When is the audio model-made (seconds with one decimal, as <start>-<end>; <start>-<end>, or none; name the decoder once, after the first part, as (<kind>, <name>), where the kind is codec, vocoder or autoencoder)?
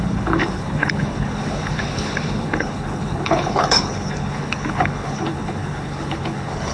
0.0-6.7 (codec, HILCodec)